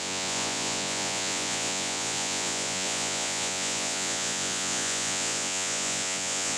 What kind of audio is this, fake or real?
fake